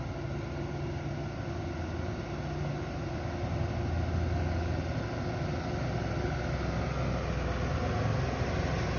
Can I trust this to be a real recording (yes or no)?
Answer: yes